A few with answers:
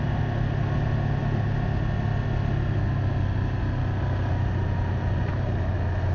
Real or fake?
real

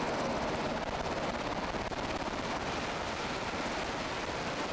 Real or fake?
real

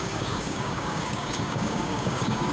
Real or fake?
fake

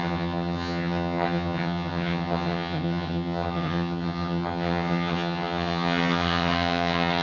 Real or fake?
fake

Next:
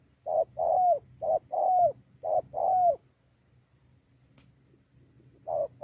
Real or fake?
real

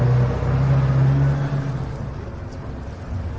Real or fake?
real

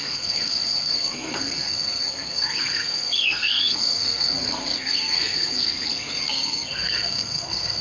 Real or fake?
fake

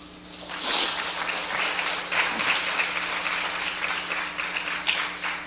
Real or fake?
real